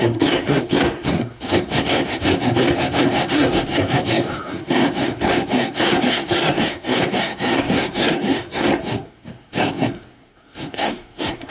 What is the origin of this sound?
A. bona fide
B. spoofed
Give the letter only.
B